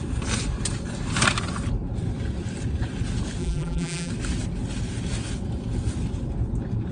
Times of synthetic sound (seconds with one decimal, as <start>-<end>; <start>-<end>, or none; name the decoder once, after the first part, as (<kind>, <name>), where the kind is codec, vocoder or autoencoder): 3.4-4.1 (vocoder, BigVGAN v2)